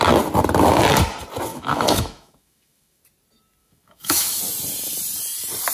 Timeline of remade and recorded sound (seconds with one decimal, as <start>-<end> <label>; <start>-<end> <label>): 0.0-1.5 recorded; 1.5-3.0 remade; 3.0-3.6 recorded; 3.6-4.4 remade; 4.4-5.7 recorded